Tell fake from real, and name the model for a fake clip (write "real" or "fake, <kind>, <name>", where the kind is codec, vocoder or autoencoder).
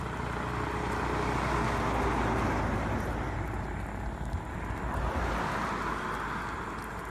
real